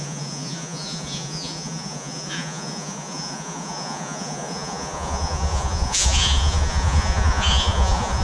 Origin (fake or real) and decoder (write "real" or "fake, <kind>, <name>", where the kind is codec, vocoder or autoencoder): fake, vocoder, Vocos